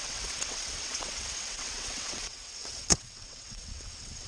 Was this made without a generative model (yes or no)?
no